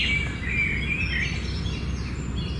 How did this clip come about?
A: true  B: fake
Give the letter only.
A